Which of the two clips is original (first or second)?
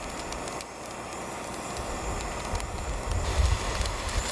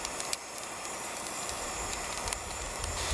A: first